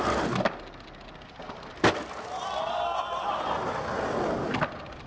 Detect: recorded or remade recorded